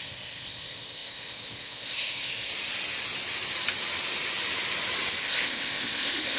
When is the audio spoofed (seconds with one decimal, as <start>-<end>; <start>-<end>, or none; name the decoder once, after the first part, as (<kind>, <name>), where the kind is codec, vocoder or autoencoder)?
0.0-2.5 (codec, ZipCodec); 5.2-6.4